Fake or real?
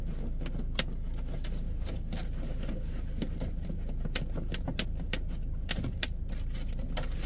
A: real